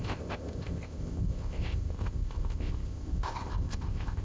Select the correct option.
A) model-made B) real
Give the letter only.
A